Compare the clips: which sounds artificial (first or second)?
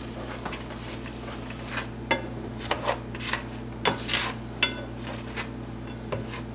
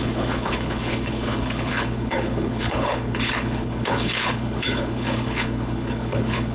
second